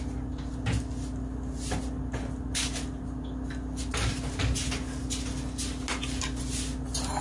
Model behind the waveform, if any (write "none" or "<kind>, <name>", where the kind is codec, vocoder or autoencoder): none